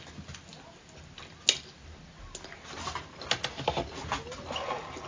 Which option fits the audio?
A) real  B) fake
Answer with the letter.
A